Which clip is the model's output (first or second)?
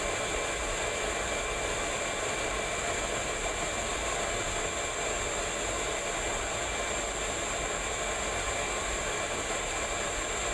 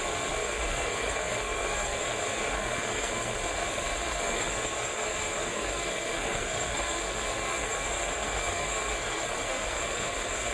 second